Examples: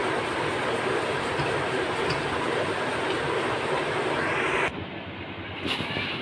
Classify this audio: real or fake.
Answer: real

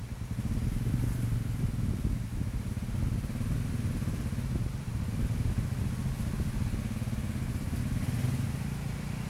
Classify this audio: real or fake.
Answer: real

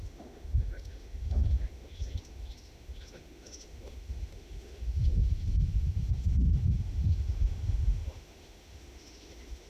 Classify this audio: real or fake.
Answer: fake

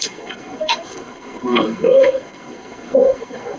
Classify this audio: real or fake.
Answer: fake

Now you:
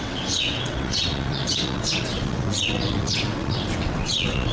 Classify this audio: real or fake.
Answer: fake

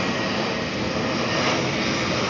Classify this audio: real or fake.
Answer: real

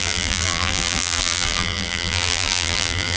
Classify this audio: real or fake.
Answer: fake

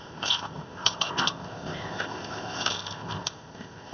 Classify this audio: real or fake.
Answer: fake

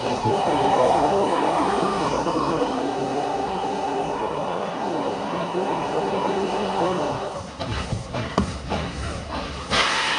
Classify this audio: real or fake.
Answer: fake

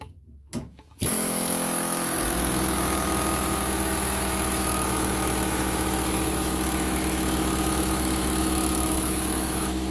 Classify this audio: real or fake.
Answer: fake